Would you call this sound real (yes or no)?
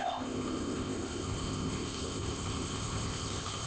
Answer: no